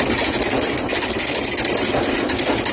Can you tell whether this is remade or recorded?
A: recorded